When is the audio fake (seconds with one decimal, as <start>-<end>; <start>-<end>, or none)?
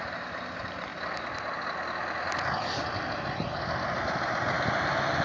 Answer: 0.0-0.9; 4.0-5.2